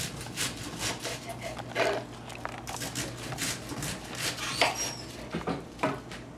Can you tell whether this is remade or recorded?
recorded